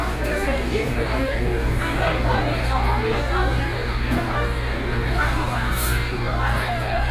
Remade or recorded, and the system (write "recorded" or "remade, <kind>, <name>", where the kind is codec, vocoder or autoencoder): remade, codec, DAC